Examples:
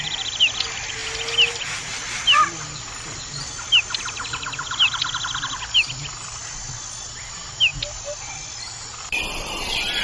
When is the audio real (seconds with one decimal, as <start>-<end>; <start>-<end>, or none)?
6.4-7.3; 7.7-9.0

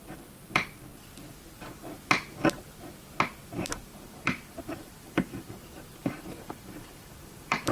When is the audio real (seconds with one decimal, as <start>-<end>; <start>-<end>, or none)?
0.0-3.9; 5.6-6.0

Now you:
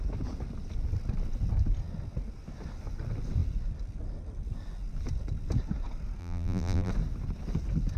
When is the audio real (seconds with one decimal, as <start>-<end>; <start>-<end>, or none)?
0.0-6.2; 6.9-8.0